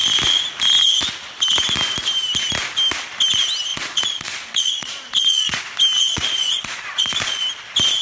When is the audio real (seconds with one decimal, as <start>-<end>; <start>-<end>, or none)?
0.0-3.7; 5.6-6.0; 7.4-8.0